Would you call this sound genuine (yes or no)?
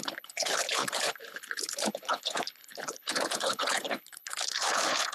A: no